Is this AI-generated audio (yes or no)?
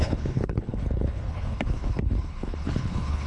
yes